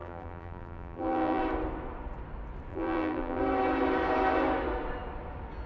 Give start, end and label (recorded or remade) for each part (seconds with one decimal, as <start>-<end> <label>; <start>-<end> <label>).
0.0-1.4 remade; 1.4-2.7 recorded; 2.7-3.4 remade; 3.4-5.7 recorded